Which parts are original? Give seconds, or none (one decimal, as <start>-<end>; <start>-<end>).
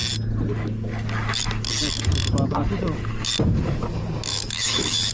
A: 0.0-4.3